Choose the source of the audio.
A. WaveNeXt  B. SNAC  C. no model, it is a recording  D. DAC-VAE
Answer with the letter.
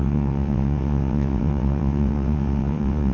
A